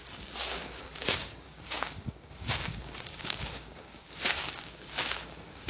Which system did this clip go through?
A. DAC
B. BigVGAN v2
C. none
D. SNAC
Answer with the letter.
A